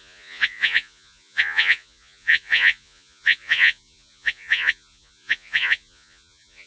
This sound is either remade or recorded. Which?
remade